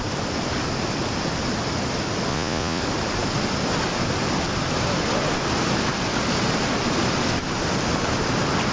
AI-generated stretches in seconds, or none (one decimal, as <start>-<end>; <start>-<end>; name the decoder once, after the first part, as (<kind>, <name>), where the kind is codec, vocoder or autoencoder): 2.3-2.8 (vocoder, Vocos)